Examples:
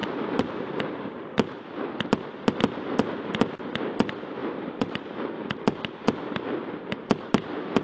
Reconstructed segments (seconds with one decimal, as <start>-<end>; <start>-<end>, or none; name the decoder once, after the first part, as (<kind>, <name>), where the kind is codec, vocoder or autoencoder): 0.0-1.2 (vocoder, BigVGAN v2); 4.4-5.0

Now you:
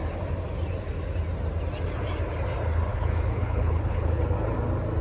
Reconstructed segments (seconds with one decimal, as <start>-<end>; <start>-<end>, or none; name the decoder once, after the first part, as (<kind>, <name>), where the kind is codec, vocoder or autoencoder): 2.9-4.2 (codec, HILCodec)

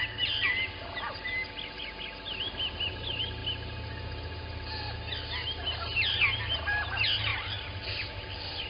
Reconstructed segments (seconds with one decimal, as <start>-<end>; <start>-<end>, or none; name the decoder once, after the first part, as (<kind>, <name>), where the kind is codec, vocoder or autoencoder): none

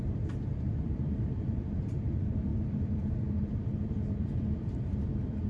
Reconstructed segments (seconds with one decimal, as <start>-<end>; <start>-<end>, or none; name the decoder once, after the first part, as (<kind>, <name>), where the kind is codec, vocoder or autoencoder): 0.0-5.5 (vocoder, BigVGAN v2)

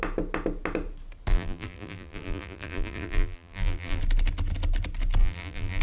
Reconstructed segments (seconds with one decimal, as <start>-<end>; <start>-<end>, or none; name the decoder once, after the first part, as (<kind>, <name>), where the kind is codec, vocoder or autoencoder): 1.3-4.0 (vocoder, BigVGAN v2); 5.2-5.8

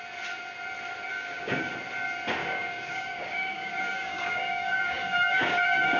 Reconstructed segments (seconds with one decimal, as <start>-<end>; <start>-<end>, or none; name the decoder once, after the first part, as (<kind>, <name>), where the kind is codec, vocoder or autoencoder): 1.1-1.7 (codec, DAC); 2.4-6.0

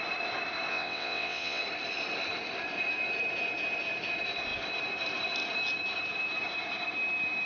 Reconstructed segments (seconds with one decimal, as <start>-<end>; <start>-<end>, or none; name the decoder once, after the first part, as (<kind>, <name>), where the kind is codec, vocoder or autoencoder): 0.7-1.6 (vocoder, WaveNeXt)

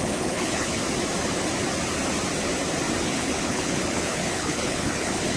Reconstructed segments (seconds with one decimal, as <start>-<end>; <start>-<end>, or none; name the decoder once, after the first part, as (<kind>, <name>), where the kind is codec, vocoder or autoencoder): 0.0-0.8 (codec, HILCodec); 3.0-5.4